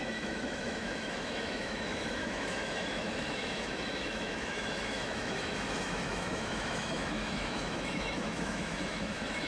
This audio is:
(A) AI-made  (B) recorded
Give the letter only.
A